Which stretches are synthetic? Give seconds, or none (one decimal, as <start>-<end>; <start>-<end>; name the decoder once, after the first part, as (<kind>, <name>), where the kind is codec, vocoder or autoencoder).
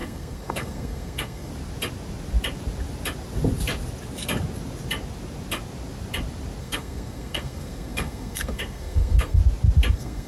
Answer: 0.0-1.5 (codec, SNAC); 6.6-9.4; 9.9-10.3